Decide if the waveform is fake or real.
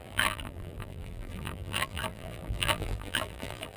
fake